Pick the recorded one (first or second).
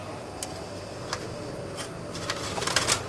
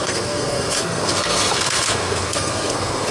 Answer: first